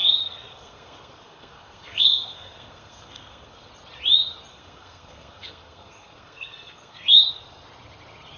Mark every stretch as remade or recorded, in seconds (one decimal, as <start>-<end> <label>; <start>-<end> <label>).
0.0-3.7 remade; 3.7-4.5 recorded; 4.5-7.3 remade; 7.3-8.4 recorded